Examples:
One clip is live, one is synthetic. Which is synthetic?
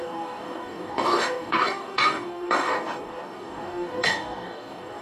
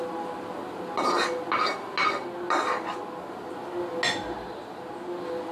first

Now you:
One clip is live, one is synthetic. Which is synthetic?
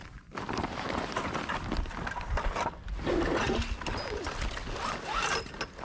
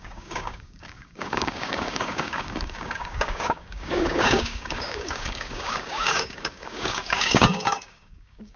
second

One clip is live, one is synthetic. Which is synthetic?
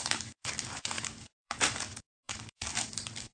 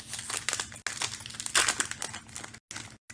first